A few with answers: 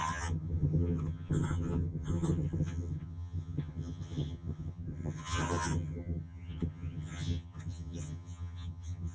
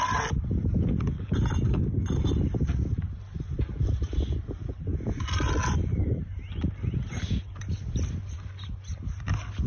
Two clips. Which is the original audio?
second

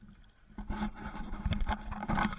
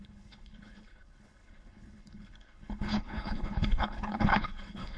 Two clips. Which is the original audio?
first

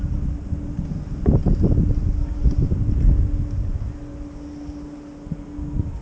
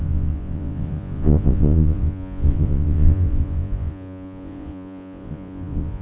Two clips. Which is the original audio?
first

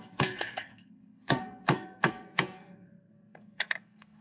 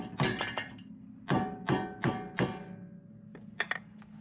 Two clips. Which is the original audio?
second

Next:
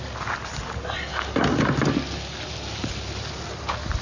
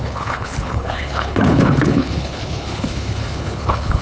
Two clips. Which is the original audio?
first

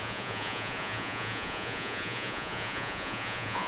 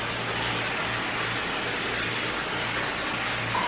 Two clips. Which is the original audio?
second